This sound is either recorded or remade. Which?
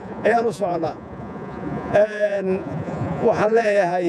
remade